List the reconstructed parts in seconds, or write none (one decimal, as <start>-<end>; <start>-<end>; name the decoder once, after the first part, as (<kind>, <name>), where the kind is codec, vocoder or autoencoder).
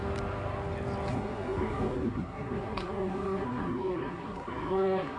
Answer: 1.1-5.2 (codec, SNAC)